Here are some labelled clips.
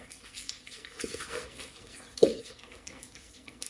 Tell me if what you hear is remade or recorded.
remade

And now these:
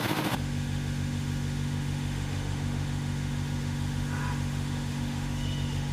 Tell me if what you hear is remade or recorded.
remade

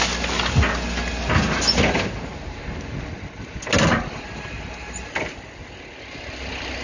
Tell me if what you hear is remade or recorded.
recorded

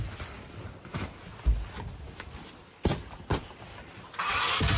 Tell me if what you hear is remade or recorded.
recorded